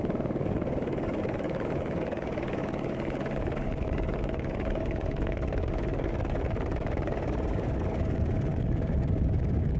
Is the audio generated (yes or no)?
yes